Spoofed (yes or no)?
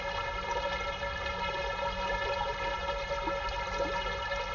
no